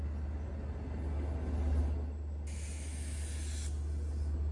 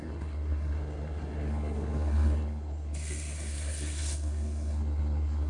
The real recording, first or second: first